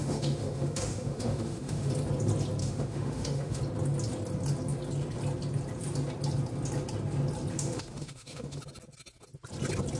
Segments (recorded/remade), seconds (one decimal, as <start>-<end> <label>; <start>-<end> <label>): 0.0-1.9 remade; 1.9-2.6 recorded; 2.6-3.6 remade; 3.6-7.5 recorded; 7.5-8.6 remade; 8.6-10.0 recorded